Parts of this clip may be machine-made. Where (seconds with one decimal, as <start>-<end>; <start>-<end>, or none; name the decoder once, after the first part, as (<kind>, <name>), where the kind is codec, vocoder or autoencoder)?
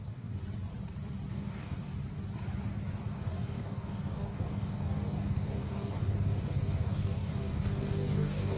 0.0-0.4 (codec, DAC); 1.3-1.9; 3.1-8.6